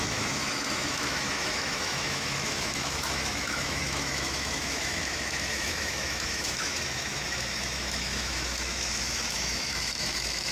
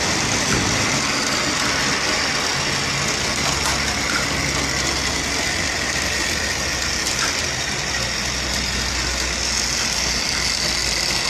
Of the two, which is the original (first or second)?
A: second